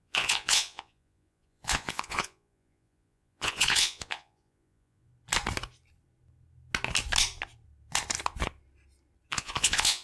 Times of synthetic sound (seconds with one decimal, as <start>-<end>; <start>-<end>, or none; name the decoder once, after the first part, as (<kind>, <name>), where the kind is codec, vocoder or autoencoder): 0.0-5.1 (vocoder, Vocos); 9.3-10.0